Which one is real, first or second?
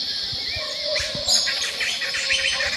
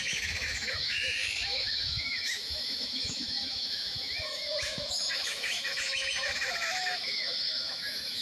first